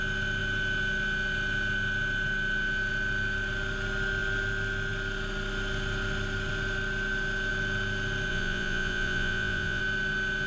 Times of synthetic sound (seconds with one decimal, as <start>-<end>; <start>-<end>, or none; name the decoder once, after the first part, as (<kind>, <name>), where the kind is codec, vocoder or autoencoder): 8.3-9.8 (vocoder, Vocos)